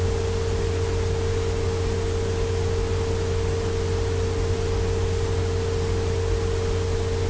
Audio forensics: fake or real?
real